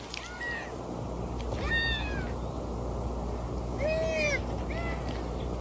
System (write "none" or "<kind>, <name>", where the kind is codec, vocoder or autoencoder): none